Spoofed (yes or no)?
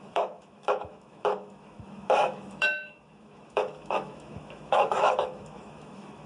yes